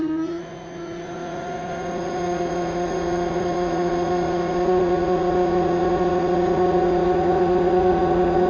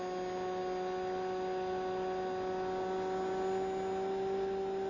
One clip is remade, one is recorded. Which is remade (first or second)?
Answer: first